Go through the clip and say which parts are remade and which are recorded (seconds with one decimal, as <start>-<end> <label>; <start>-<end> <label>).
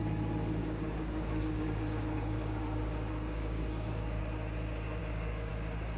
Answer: 0.0-0.6 recorded; 0.6-4.2 remade; 4.2-5.0 recorded; 5.0-5.5 remade; 5.5-6.0 recorded